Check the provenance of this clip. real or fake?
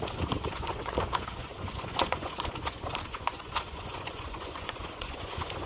fake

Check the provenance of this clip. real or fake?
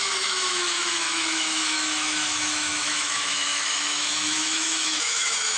fake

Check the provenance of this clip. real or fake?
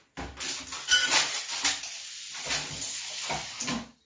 real